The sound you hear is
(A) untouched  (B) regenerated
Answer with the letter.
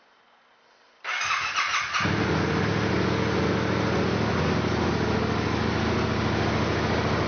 A